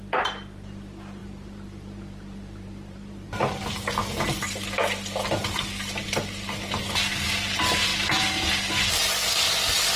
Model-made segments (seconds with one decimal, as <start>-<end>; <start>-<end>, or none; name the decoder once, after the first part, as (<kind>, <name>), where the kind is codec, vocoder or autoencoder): 1.2-4.0 (vocoder, BigVGAN v2); 7.9-8.5